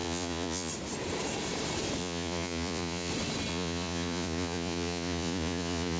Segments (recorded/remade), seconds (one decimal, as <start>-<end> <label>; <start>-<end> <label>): 0.0-0.7 remade; 0.7-2.0 recorded; 2.0-3.1 remade; 3.1-3.5 recorded; 3.5-6.0 remade